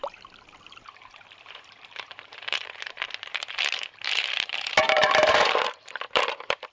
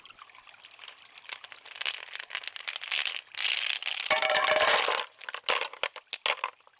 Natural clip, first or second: second